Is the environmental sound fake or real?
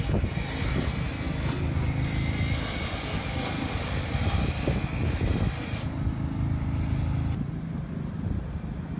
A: real